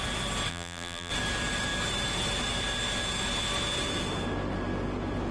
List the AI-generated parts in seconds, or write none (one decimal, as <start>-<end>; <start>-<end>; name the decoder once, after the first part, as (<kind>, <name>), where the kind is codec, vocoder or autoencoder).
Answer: 0.5-1.1 (vocoder, BigVGAN v2)